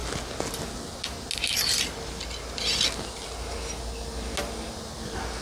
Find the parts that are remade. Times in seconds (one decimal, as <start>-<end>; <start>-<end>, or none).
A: none